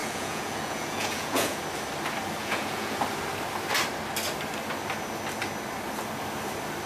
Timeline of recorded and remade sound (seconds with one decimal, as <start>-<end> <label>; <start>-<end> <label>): 0.0-1.6 remade; 1.6-2.4 recorded; 2.4-2.9 remade; 2.9-6.9 recorded